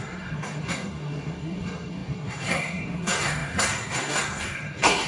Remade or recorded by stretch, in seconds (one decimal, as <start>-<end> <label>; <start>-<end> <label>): 0.0-5.1 remade